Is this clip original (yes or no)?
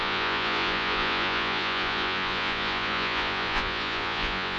no